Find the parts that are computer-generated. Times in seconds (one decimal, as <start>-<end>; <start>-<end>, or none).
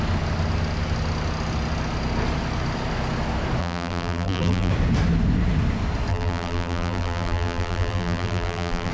3.6-4.7; 6.1-8.9